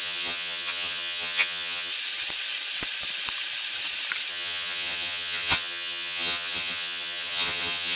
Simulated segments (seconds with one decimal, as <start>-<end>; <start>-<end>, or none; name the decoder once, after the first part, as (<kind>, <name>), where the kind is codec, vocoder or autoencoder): 0.0-1.9 (vocoder, HiFi-GAN); 4.3-8.0